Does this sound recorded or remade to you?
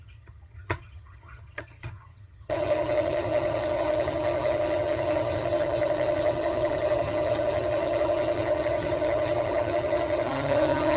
remade